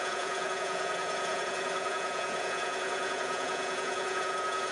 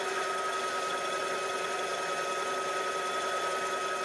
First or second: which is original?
second